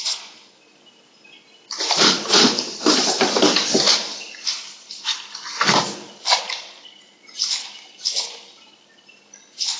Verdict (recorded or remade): remade